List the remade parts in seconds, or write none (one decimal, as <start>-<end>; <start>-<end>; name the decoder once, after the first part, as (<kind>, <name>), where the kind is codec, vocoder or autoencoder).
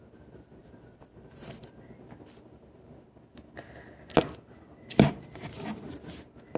0.6-2.0 (vocoder, BigVGAN v2)